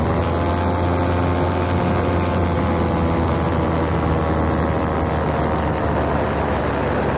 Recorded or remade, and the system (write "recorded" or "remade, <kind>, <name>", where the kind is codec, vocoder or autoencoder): recorded